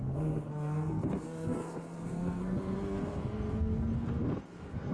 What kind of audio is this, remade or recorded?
remade